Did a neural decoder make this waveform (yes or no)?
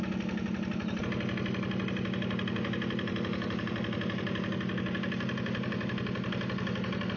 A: no